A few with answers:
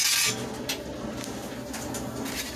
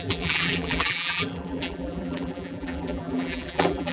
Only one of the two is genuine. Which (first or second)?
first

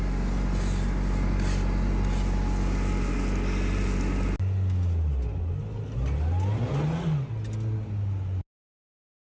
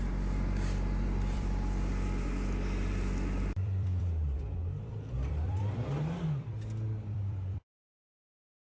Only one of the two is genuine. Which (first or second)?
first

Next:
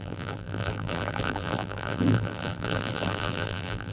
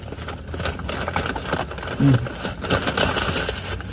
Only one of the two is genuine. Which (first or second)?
second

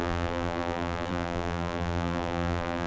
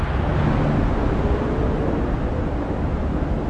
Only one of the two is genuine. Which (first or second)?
second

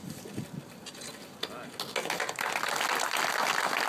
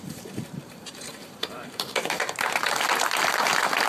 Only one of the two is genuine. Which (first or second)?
first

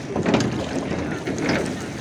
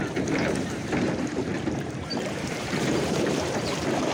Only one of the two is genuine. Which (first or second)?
first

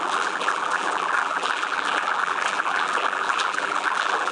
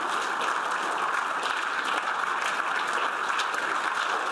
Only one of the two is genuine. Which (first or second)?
second